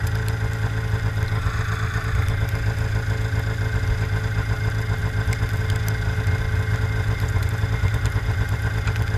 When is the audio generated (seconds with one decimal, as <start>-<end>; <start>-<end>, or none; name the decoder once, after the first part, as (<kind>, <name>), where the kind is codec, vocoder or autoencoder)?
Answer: none